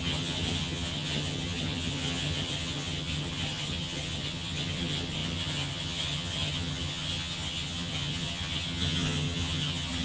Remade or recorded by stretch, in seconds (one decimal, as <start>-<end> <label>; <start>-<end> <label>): 0.0-10.0 remade